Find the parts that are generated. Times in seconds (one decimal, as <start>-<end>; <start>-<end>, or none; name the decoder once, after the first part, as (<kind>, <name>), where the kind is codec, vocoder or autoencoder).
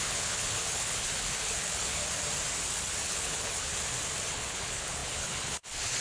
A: 0.0-2.0 (codec, HILCodec); 3.0-3.7; 4.3-6.0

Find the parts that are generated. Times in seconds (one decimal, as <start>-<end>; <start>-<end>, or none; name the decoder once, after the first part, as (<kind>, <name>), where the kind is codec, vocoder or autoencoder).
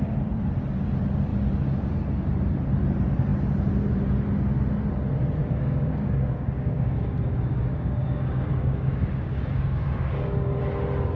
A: 5.4-10.6 (codec, DAC)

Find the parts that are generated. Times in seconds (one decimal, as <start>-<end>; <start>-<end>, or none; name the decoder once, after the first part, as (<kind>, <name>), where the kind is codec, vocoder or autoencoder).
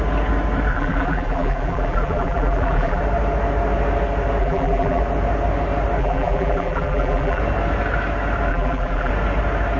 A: 0.7-3.0 (vocoder, BigVGAN v2); 4.4-5.0; 6.0-7.4; 8.5-9.1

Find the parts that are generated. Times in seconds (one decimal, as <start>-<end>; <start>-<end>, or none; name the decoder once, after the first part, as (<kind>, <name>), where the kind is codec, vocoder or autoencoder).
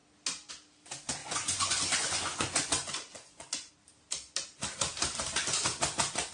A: 1.2-3.7 (vocoder, Vocos)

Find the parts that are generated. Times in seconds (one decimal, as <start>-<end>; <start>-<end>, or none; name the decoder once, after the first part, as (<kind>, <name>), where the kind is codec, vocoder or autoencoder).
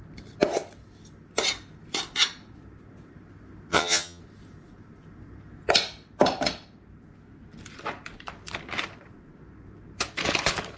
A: 3.7-4.2 (vocoder, HiFi-GAN)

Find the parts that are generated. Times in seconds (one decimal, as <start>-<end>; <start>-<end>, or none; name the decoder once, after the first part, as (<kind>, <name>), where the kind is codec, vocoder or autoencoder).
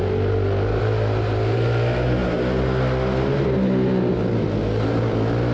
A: none